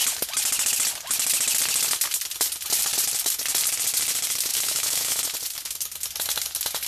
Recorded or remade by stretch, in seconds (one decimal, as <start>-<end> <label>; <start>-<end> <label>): 0.0-4.5 recorded; 4.5-5.2 remade; 5.2-6.9 recorded